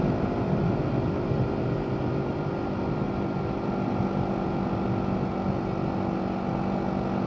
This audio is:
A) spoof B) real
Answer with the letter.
B